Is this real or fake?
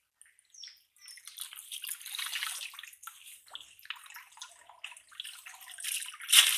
real